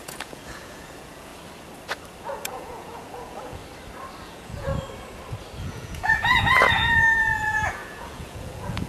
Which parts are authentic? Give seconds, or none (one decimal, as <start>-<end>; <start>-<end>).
1.3-2.2; 3.6-4.2; 4.7-5.6